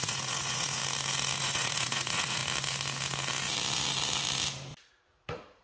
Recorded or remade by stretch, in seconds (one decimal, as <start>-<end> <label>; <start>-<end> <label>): 0.0-0.8 remade; 0.8-1.4 recorded; 1.4-2.4 remade; 2.4-4.9 recorded; 4.9-5.6 remade